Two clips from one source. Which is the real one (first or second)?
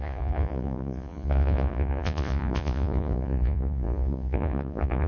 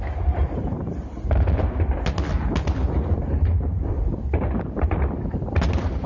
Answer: second